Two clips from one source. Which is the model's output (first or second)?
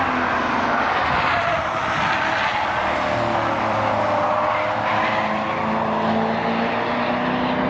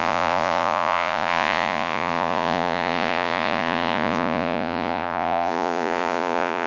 second